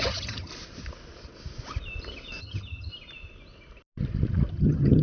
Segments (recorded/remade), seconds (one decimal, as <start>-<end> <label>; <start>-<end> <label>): 0.0-0.5 remade; 0.5-2.4 recorded; 2.4-2.9 remade; 2.9-4.5 recorded; 4.5-5.0 remade